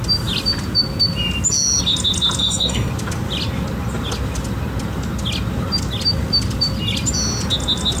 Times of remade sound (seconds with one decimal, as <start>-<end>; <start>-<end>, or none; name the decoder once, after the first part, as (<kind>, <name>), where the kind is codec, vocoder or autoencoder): 2.4-2.9 (codec, SNAC)